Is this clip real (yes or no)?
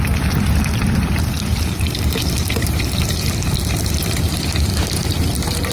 yes